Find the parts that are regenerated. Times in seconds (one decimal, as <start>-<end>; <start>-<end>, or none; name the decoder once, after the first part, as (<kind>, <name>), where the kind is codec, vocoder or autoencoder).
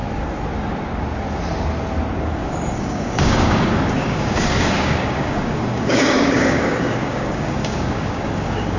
2.2-8.8 (codec, DAC)